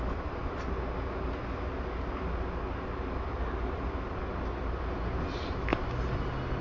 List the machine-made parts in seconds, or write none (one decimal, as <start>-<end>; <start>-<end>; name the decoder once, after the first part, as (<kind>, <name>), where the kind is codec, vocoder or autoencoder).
none